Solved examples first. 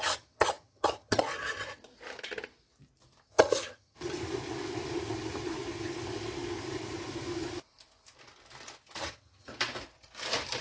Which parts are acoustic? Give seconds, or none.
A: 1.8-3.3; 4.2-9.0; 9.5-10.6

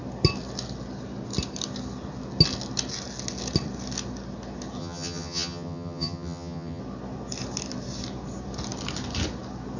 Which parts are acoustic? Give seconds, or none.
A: 0.0-4.8; 6.8-9.8